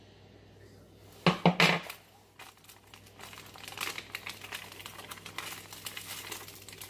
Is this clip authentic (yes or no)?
yes